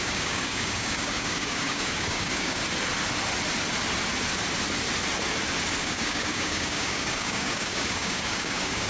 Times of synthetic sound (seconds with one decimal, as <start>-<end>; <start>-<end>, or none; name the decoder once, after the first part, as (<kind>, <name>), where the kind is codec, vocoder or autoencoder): 0.0-2.6 (codec, DAC); 5.8-8.9